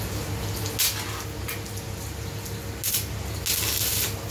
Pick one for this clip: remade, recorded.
recorded